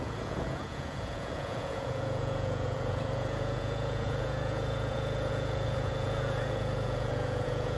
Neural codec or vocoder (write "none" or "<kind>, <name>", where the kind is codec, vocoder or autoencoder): vocoder, Vocos